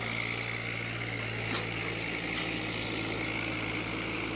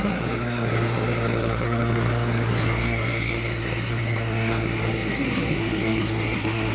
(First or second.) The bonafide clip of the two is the first